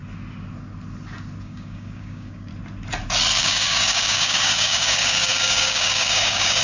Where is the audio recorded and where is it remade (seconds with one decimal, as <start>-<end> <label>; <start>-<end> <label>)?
0.0-1.4 recorded; 1.4-2.5 remade; 2.5-3.4 recorded; 3.4-6.6 remade